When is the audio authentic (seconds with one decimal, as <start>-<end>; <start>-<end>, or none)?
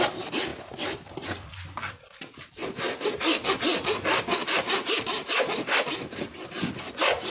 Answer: 0.0-2.6; 3.5-4.4; 6.2-7.3